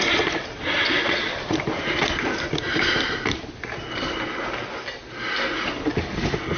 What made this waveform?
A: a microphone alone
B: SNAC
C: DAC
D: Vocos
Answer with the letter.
A